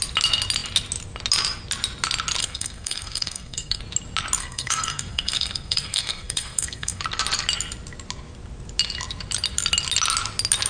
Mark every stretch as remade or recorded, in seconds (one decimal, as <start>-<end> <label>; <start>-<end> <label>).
0.0-2.4 recorded; 2.4-3.8 remade; 3.8-4.4 recorded; 4.4-7.0 remade; 7.0-10.7 recorded